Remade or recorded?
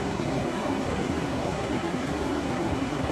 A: remade